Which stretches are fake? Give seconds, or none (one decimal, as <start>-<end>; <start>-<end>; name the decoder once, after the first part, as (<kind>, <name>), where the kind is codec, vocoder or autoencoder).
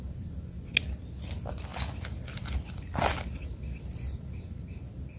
none